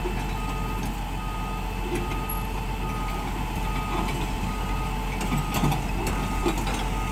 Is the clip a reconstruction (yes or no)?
no